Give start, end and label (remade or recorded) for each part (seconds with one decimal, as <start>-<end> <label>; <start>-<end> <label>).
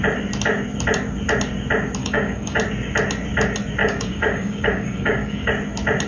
0.0-2.0 recorded; 2.0-2.6 remade; 2.6-3.8 recorded; 3.8-5.5 remade; 5.5-6.1 recorded